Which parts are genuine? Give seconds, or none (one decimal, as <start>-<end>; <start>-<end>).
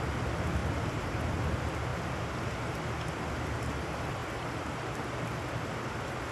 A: 0.0-6.3